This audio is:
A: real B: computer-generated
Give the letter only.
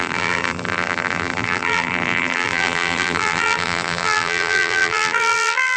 B